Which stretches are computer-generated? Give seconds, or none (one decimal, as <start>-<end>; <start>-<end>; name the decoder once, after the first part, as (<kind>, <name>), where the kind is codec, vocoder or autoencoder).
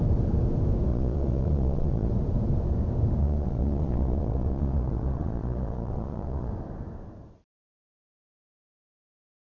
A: 0.9-2.1 (vocoder, Vocos); 3.2-6.5